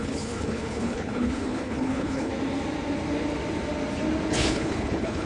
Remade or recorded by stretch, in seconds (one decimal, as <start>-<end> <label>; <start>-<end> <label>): 0.0-2.3 remade; 2.3-4.3 recorded; 4.3-5.3 remade